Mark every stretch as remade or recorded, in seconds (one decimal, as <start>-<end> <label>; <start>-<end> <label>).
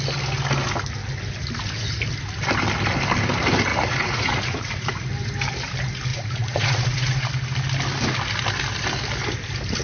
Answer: 0.0-3.7 recorded; 3.7-4.9 remade; 4.9-6.1 recorded; 6.1-7.3 remade; 7.3-9.8 recorded